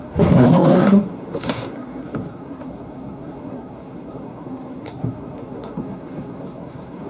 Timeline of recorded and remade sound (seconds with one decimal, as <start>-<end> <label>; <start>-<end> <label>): 0.0-7.1 remade